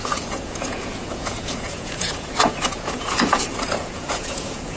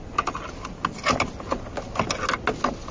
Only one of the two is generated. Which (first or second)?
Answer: first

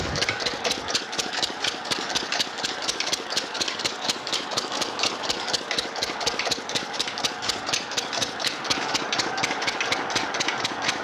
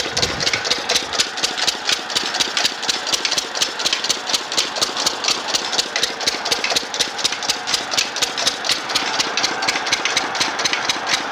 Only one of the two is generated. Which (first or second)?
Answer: first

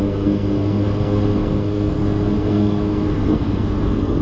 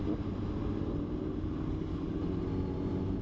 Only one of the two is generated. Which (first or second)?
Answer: first